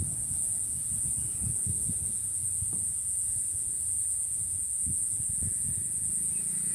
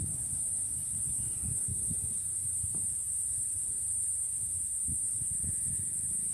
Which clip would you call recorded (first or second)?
second